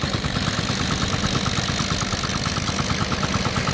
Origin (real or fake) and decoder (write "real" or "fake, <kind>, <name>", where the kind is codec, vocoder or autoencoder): real